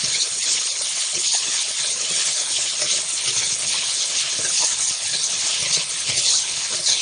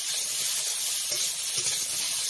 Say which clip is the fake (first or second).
first